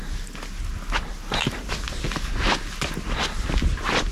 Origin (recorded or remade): recorded